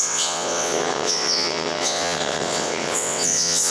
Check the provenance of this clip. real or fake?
fake